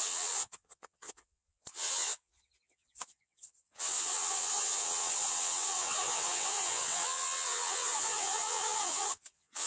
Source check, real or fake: fake